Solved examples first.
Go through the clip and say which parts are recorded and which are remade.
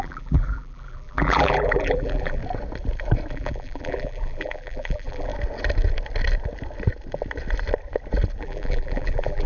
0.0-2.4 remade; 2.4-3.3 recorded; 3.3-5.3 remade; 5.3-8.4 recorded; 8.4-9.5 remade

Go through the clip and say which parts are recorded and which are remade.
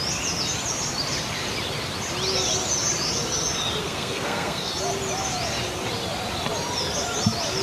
0.0-3.8 recorded; 3.8-4.7 remade; 4.7-7.6 recorded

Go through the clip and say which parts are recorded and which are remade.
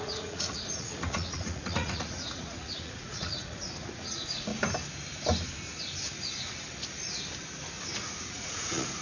0.0-4.5 remade; 4.5-8.2 recorded; 8.2-9.0 remade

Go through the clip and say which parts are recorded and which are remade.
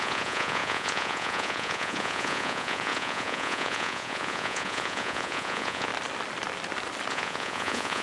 0.0-5.9 remade; 5.9-7.1 recorded; 7.1-8.0 remade